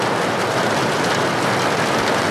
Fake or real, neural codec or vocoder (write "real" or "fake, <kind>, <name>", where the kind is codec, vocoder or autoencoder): real